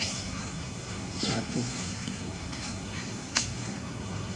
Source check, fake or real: fake